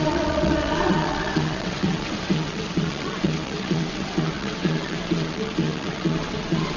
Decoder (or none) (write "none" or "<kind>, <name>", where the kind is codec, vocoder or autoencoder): vocoder, WaveNeXt